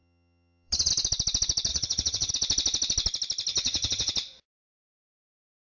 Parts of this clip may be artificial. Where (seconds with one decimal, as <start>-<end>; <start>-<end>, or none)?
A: 0.0-0.9; 1.7-2.3; 3.5-4.1